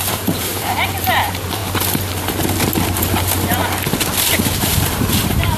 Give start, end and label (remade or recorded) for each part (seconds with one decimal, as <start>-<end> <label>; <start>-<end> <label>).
0.0-1.6 remade; 1.6-3.0 recorded; 3.0-3.6 remade; 3.6-4.4 recorded; 4.4-5.6 remade